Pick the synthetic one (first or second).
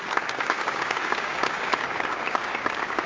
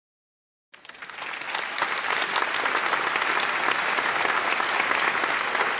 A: first